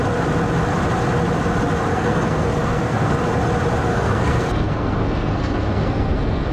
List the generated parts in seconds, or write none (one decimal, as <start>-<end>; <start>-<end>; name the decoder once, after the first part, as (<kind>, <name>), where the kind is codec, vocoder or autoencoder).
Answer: 1.9-3.2 (codec, SNAC); 3.9-6.5